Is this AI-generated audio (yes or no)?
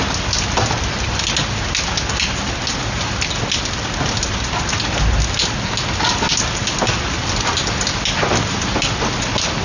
no